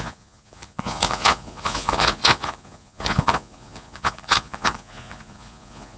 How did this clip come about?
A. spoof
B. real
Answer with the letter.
A